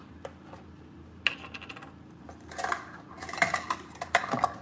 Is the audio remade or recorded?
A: recorded